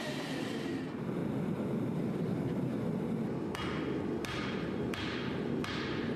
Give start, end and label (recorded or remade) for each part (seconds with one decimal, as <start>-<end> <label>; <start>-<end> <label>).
0.0-1.2 remade; 1.2-1.8 recorded; 1.8-2.7 remade; 2.7-5.7 recorded; 5.7-6.2 remade